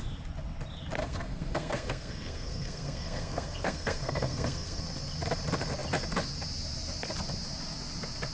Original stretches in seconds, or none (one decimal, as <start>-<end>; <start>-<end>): 0.0-1.0; 4.8-8.3